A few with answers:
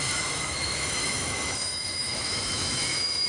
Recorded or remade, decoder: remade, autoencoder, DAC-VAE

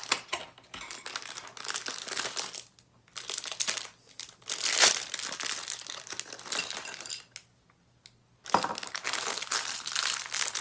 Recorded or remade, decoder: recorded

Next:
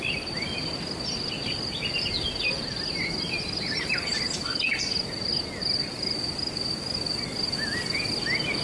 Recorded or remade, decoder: recorded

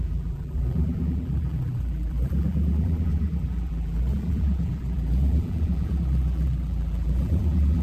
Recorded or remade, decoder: remade, vocoder, BigVGAN v2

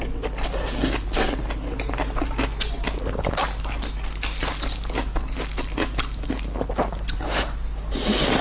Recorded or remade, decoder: recorded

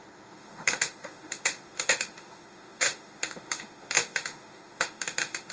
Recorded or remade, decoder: remade, autoencoder, DAC-VAE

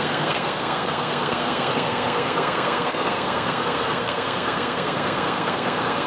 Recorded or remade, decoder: remade, codec, SNAC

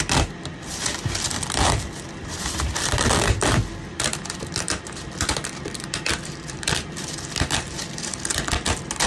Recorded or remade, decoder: remade, vocoder, BigVGAN v2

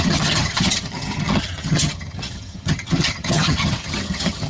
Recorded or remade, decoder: remade, vocoder, HiFi-GAN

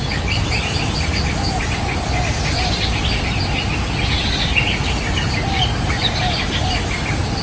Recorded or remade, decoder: recorded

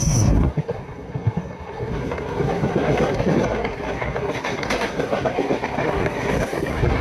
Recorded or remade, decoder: remade, codec, SNAC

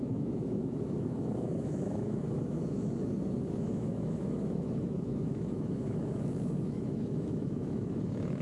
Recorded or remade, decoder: remade, autoencoder, DAC-VAE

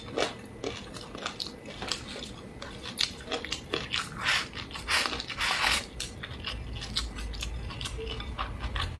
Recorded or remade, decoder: recorded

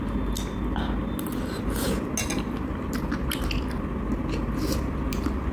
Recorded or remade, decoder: recorded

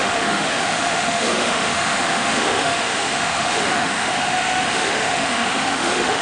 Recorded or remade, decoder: remade, autoencoder, DAC-VAE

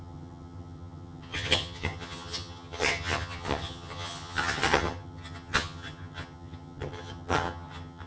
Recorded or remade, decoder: remade, vocoder, HiFi-GAN